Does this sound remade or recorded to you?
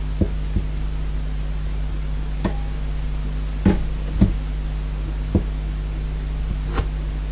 recorded